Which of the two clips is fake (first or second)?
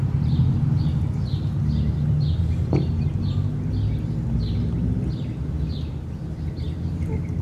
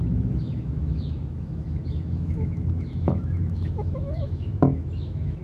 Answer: second